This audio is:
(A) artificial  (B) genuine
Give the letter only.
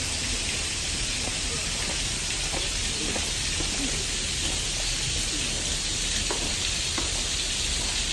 B